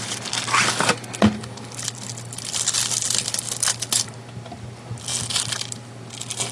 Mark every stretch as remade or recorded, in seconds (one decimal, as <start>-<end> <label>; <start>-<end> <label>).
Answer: 0.0-6.5 recorded